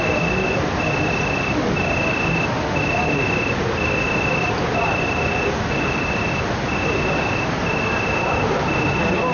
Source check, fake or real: real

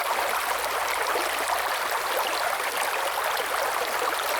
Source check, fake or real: real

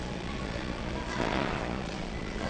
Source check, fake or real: fake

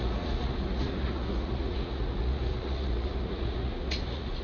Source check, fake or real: fake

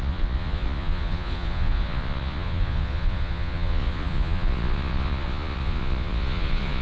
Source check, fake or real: fake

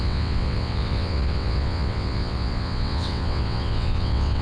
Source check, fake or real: fake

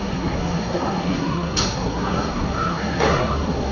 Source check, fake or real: fake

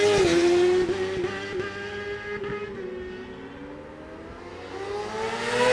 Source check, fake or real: real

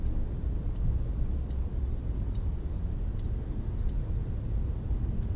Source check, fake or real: real